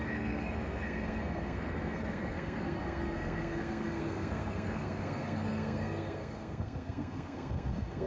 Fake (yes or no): yes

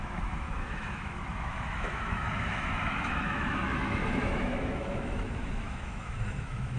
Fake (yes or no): yes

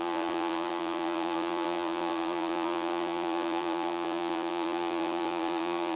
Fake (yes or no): yes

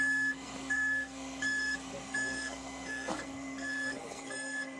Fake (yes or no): yes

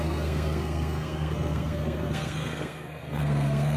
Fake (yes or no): yes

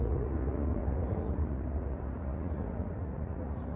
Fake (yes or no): yes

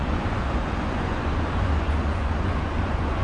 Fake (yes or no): yes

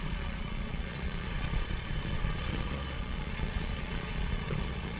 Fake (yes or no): yes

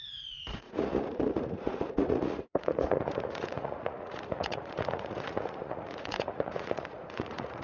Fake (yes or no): yes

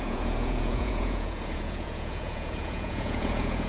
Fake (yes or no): yes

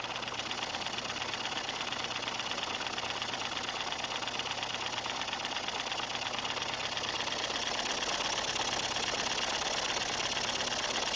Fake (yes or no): no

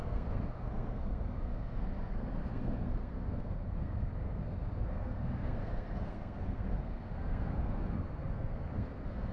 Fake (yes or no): yes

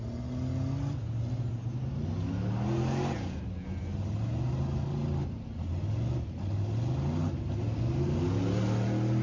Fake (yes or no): no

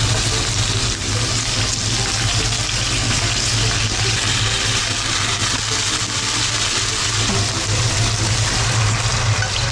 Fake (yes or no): no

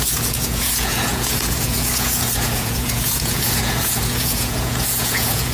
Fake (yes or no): yes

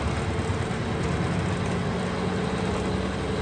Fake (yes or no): no